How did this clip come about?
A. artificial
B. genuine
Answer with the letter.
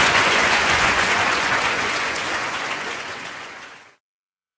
A